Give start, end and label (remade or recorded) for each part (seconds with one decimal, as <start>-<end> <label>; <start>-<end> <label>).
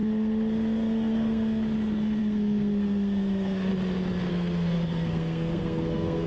0.0-3.7 remade; 3.7-4.3 recorded; 4.3-6.3 remade